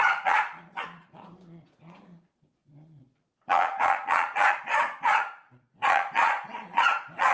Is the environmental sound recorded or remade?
remade